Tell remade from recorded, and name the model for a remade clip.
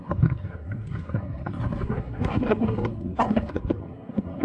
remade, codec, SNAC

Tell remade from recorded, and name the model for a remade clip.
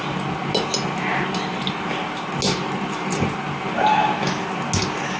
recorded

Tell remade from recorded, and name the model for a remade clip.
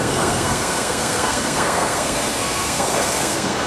remade, codec, SNAC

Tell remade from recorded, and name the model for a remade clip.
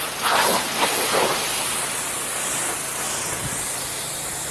recorded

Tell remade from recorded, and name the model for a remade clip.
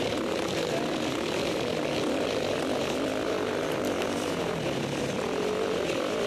recorded